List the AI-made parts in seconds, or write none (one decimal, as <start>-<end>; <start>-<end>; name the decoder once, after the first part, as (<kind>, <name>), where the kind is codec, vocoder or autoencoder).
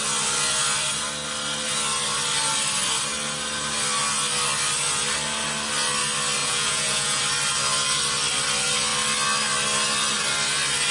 6.4-7.2 (vocoder, Vocos)